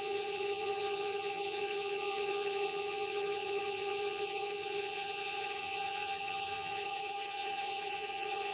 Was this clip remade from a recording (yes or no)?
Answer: yes